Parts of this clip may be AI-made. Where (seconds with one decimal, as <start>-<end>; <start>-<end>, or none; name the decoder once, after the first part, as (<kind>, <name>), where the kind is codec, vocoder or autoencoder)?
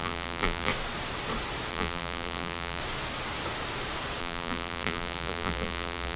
0.0-0.7 (vocoder, BigVGAN v2); 1.7-2.8; 4.2-6.2